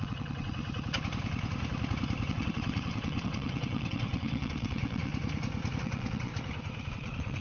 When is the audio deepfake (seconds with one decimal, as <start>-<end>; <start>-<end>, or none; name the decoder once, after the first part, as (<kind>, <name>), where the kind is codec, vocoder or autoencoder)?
0.0-0.6 (vocoder, WaveNeXt); 2.3-5.1; 5.8-6.3; 6.9-7.4